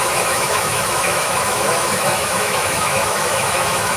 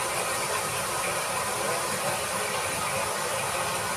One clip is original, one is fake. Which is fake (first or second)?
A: first